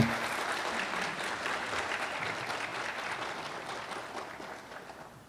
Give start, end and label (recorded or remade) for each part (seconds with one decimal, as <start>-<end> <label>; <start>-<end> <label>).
0.0-5.3 recorded